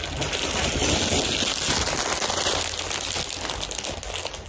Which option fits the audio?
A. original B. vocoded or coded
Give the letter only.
A